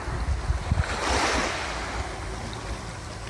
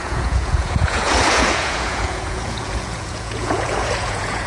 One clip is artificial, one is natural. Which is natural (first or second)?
first